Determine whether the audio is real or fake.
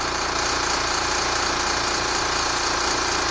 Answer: real